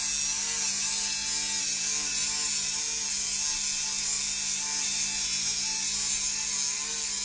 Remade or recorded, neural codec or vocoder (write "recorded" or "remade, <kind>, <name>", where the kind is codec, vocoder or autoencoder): recorded